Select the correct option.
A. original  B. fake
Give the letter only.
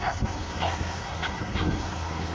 B